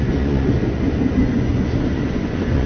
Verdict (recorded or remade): remade